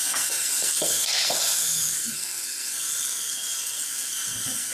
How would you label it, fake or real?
fake